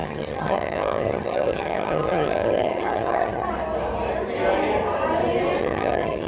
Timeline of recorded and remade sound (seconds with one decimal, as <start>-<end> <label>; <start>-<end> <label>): 0.0-3.5 remade; 3.5-5.6 recorded; 5.6-6.3 remade